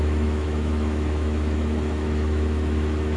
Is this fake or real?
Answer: fake